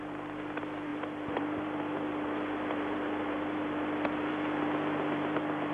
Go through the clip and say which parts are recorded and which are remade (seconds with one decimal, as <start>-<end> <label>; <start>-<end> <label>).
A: 0.0-5.7 recorded

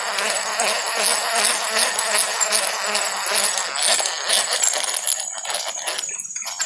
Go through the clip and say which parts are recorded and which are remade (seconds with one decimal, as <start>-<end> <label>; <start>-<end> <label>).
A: 0.0-6.7 recorded

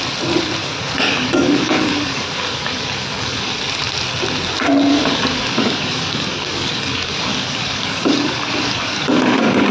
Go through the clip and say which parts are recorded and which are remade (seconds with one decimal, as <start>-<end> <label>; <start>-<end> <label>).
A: 0.0-0.6 recorded; 0.6-3.5 remade; 3.5-4.9 recorded; 4.9-9.7 remade